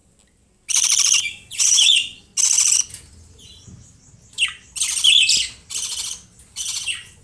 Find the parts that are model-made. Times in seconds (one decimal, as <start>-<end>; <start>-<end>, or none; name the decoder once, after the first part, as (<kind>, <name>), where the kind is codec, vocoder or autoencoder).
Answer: 1.2-2.3 (vocoder, Vocos); 6.6-7.2